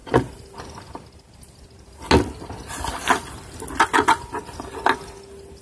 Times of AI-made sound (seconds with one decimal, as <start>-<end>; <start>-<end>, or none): none